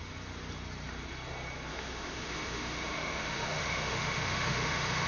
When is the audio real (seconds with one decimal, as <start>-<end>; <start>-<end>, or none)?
0.0-1.7